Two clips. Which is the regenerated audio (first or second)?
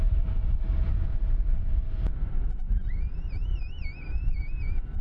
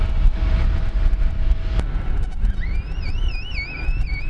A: first